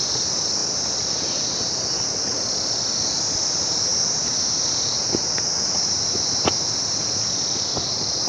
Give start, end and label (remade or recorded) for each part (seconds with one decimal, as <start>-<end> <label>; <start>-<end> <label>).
0.0-0.6 recorded; 0.6-3.2 remade; 3.2-8.3 recorded